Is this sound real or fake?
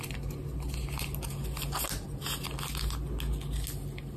real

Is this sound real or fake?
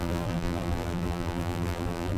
fake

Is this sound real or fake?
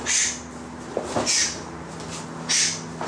real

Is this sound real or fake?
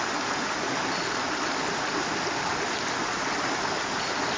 real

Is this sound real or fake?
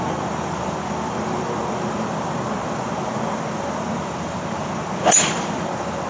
fake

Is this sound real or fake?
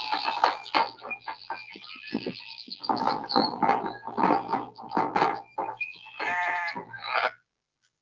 fake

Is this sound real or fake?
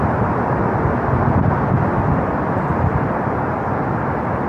real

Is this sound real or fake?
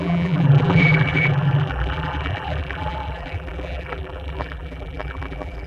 fake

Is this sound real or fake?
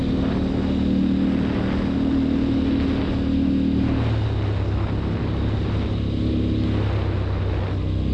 real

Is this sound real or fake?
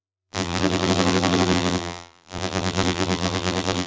fake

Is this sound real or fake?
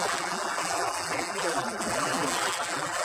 fake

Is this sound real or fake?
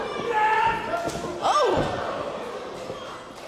real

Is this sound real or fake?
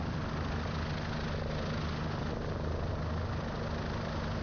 real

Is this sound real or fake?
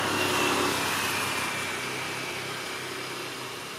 real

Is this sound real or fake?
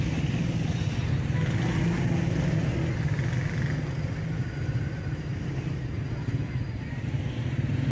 real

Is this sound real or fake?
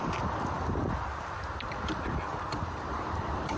fake